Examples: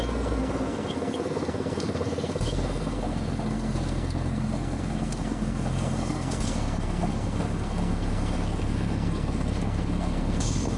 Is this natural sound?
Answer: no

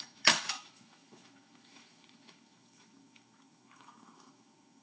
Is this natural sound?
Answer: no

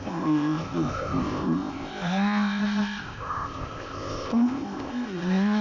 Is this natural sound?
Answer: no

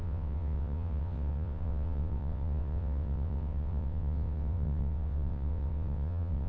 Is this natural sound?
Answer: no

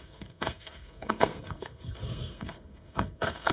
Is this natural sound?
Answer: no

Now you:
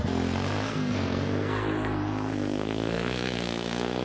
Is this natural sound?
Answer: no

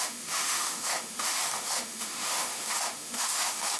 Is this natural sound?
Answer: no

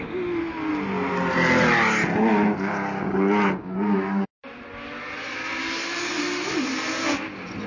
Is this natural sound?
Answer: yes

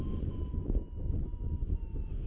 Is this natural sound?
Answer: no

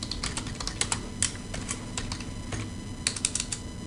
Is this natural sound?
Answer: yes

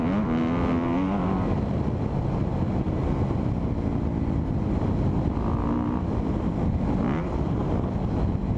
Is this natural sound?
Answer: yes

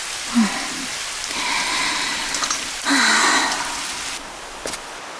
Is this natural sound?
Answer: yes